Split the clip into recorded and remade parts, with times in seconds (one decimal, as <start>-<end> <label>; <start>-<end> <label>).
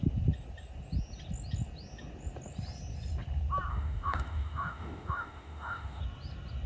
0.0-3.7 recorded; 3.7-6.0 remade; 6.0-6.7 recorded